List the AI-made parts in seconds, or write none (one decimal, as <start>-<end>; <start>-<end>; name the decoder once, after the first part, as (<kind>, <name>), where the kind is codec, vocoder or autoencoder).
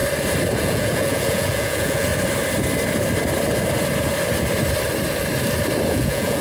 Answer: 0.6-2.1 (vocoder, Vocos); 5.9-6.4